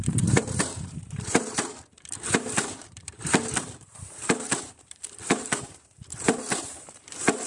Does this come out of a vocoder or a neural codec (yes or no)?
yes